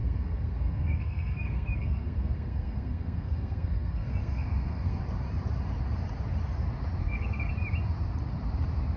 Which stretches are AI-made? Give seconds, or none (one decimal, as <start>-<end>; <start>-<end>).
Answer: 0.0-5.0; 7.0-7.5